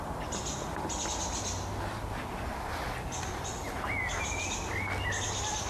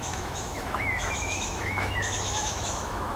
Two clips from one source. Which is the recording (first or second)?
first